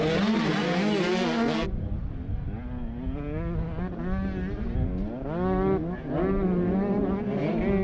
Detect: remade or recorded recorded